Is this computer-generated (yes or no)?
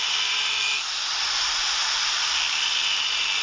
no